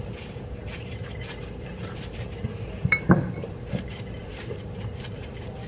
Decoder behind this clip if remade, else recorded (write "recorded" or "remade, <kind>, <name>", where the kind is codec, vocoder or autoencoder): remade, vocoder, BigVGAN v2